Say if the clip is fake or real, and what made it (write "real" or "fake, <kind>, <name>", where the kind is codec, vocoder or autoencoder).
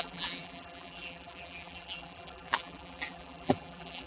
fake, vocoder, BigVGAN v2